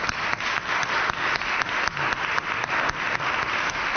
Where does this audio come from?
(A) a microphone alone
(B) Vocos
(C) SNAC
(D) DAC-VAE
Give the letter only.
A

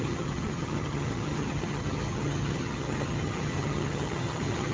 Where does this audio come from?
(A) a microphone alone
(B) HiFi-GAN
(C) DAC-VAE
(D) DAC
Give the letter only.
B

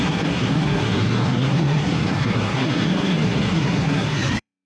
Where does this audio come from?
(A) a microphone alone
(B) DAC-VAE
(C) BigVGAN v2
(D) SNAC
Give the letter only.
D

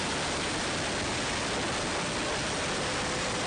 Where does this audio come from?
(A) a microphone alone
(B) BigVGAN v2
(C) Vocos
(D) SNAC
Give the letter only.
A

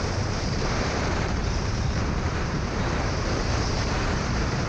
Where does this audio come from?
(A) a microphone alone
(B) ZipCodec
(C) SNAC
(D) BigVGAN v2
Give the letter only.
D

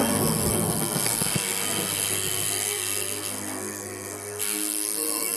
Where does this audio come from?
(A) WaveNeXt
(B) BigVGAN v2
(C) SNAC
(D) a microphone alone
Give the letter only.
C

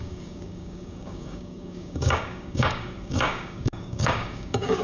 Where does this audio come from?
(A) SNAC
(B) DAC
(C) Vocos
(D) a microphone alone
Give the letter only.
B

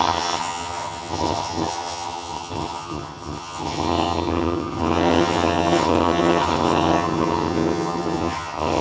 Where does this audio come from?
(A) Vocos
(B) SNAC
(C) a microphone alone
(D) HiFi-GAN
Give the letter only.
D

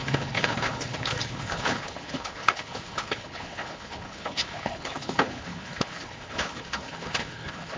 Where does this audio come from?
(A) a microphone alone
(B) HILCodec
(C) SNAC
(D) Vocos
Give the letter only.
B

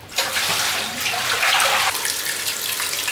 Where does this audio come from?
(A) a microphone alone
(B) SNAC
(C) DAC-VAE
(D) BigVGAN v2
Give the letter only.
D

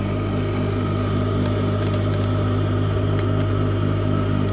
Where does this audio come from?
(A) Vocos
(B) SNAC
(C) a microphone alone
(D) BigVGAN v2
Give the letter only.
C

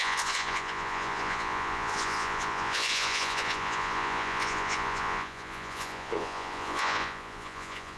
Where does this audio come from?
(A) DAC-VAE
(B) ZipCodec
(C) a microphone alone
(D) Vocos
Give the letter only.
D